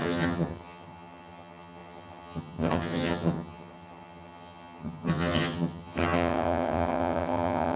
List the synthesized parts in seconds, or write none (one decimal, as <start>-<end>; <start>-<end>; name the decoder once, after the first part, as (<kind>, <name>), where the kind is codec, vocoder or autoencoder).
0.0-7.8 (vocoder, HiFi-GAN)